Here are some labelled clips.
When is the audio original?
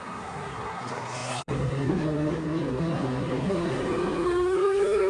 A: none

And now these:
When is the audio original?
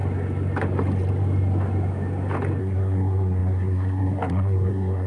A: 0.0-2.6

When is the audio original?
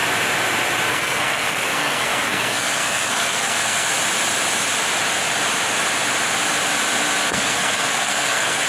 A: 0.0-0.9; 3.9-7.3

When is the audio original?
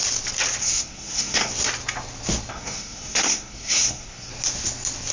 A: 0.0-0.6; 1.5-2.5; 4.3-5.1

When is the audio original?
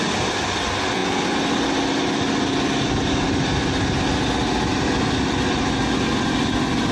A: 0.0-6.9